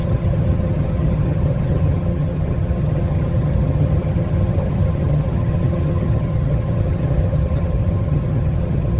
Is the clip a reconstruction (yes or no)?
yes